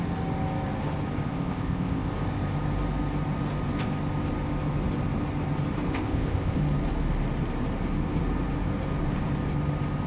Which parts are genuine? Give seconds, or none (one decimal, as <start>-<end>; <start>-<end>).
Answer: 0.0-1.3; 2.1-5.9; 6.6-10.1